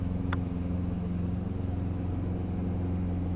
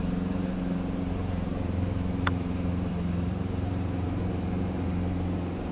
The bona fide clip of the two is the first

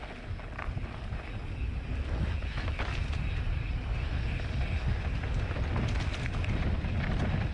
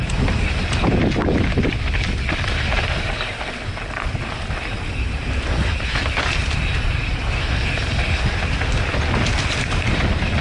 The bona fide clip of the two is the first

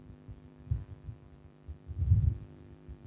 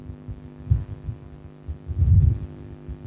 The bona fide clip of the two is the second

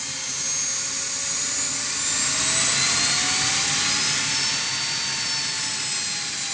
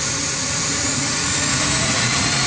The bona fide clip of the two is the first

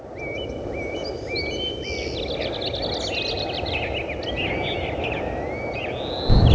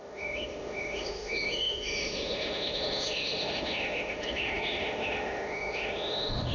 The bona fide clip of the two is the first